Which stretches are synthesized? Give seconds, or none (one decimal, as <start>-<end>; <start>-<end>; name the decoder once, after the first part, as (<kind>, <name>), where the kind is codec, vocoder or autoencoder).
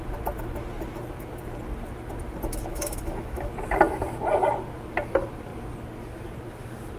2.7-3.5 (autoencoder, DAC-VAE)